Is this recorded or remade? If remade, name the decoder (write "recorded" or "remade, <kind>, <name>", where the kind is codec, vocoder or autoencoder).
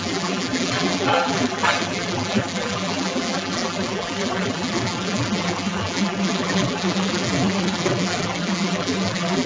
remade, vocoder, BigVGAN v2